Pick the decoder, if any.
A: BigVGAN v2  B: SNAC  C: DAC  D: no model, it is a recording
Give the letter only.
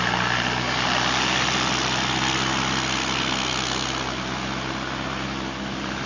D